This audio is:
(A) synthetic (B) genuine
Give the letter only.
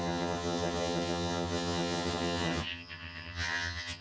A